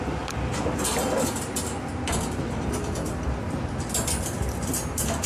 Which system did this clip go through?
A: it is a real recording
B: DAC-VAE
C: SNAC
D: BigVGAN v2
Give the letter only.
D